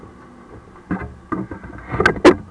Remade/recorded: recorded